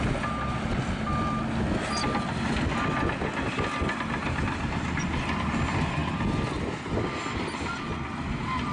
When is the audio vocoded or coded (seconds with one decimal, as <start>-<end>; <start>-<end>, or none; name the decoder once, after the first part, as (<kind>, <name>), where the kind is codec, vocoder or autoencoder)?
none

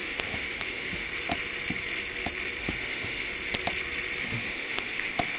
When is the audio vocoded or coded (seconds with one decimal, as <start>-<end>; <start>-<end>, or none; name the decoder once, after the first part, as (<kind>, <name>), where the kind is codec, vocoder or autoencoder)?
0.0-1.1 (autoencoder, DAC-VAE); 2.6-3.3; 4.2-5.4

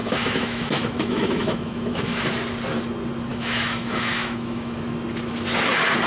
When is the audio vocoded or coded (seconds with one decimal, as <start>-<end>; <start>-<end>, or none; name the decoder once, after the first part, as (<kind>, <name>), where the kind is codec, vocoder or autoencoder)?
0.0-2.3 (autoencoder, DAC-VAE); 3.3-4.8

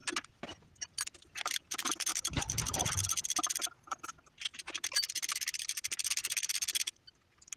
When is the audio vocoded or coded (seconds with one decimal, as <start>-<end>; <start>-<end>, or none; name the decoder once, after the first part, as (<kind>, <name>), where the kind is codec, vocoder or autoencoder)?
none

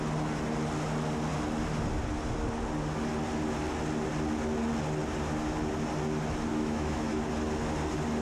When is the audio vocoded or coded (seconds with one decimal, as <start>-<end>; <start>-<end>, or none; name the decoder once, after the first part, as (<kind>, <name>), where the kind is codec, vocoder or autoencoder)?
6.5-7.3 (autoencoder, DAC-VAE)

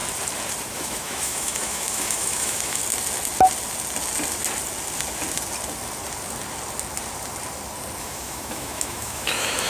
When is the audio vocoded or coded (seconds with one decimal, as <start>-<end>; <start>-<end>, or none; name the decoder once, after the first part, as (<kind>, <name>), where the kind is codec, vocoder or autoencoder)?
0.7-2.8 (autoencoder, DAC-VAE); 8.0-9.7